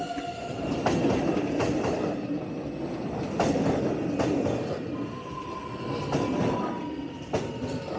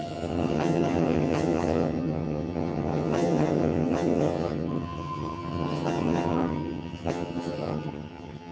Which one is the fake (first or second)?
second